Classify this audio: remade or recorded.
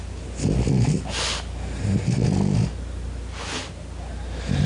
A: remade